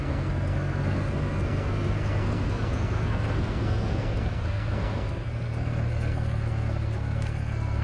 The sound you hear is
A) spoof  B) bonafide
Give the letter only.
A